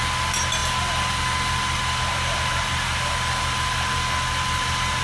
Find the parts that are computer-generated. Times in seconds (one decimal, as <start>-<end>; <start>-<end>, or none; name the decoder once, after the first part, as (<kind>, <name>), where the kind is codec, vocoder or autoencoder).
none